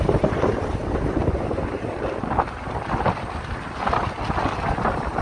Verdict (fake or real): real